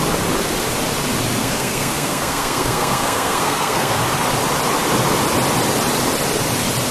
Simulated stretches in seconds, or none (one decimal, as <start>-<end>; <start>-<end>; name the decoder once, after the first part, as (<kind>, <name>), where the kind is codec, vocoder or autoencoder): 1.4-4.0 (codec, SNAC)